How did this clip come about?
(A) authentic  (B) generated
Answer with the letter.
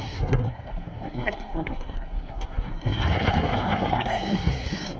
B